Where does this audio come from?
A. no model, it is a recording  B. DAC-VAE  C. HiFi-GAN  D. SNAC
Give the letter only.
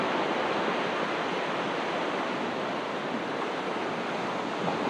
A